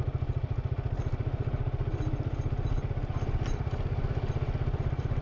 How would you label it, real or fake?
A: real